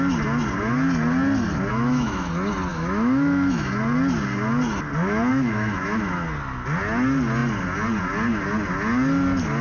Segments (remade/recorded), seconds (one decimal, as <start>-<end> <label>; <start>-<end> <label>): 0.0-1.7 recorded; 1.7-2.3 remade; 2.3-2.7 recorded; 2.7-3.7 remade; 3.7-5.3 recorded; 5.3-6.1 remade; 6.1-9.6 recorded

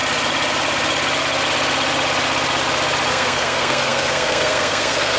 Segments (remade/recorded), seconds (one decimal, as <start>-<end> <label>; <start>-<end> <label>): 0.0-3.1 recorded; 3.1-5.2 remade

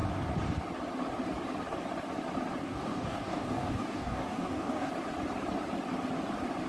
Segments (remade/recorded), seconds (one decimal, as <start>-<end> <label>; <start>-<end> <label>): 0.0-2.6 recorded; 2.6-4.9 remade; 4.9-6.7 recorded

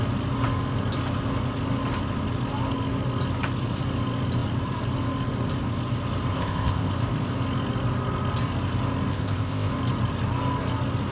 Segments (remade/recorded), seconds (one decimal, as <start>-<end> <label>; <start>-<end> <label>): 0.0-6.3 recorded; 6.3-6.9 remade; 6.9-9.1 recorded; 9.1-9.7 remade; 9.7-11.1 recorded

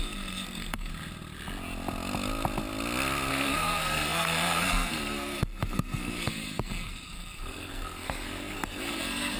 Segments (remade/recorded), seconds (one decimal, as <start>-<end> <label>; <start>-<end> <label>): 0.0-0.9 remade; 0.9-3.3 recorded; 3.3-9.4 remade

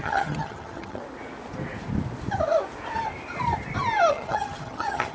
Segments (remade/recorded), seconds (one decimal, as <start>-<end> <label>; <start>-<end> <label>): 0.0-1.0 remade; 1.0-4.1 recorded; 4.1-5.1 remade

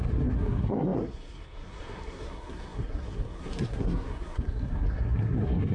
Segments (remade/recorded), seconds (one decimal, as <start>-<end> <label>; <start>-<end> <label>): 0.0-5.7 remade

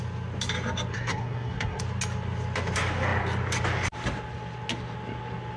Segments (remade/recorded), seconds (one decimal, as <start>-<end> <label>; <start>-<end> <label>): 0.0-0.9 recorded; 0.9-1.8 remade; 1.8-5.6 recorded